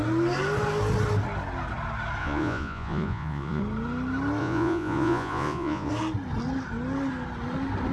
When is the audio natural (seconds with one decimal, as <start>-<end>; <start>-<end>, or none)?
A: 0.0-2.2; 3.6-4.4; 5.9-7.9